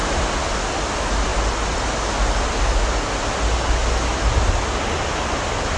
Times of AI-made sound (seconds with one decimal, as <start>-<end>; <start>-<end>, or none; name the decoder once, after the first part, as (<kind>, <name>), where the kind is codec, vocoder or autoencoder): none